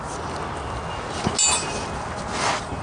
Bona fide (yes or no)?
yes